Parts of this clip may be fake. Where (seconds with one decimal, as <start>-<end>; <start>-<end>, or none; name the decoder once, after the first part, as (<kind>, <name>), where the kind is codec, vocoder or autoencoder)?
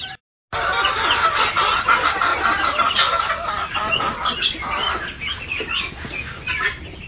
none